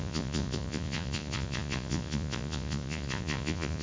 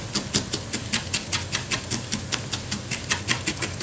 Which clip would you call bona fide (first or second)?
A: second